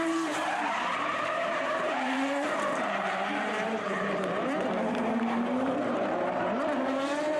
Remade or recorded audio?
remade